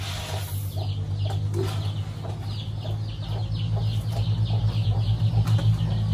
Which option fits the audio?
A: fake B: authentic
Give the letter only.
B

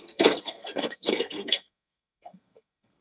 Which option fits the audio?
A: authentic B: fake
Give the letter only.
B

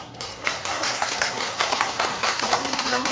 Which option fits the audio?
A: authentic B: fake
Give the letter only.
B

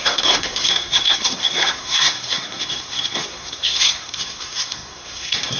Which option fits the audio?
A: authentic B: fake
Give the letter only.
B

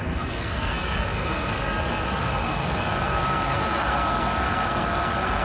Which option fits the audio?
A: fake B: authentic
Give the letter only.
A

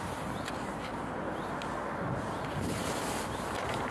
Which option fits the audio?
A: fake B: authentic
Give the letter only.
B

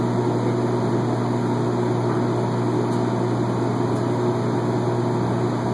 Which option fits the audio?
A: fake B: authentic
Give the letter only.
B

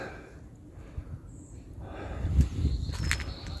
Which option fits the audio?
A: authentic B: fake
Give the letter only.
A